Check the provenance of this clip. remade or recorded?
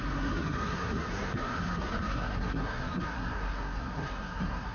remade